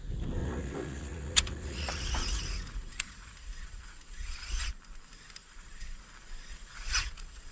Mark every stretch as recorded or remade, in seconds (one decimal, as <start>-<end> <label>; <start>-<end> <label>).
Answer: 0.0-0.4 recorded; 0.4-4.7 remade; 4.7-5.4 recorded; 5.4-6.0 remade; 6.0-6.5 recorded; 6.5-7.5 remade